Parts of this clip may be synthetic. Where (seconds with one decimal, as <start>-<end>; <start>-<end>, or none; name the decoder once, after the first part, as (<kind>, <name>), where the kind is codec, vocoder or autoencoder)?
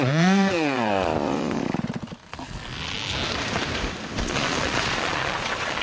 0.0-1.6 (vocoder, Vocos); 4.2-5.8